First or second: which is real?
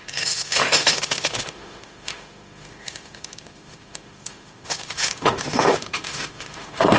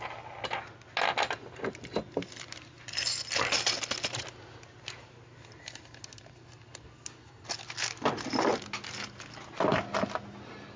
second